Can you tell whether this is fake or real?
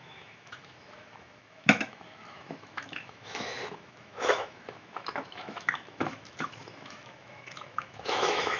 fake